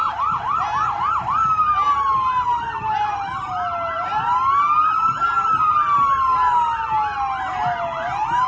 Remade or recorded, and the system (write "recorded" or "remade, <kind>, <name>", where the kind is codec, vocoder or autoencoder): recorded